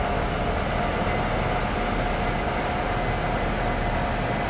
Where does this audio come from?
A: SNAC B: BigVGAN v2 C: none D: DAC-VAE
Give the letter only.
C